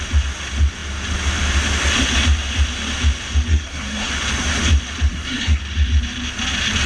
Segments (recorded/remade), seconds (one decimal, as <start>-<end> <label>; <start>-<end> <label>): 0.0-3.5 recorded; 3.5-4.1 remade; 4.1-5.1 recorded; 5.1-5.6 remade; 5.6-6.9 recorded